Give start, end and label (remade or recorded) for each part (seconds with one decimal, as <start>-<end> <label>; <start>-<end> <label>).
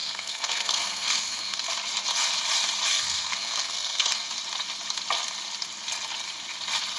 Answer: 0.0-1.7 remade; 1.7-2.9 recorded; 2.9-4.3 remade; 4.3-7.0 recorded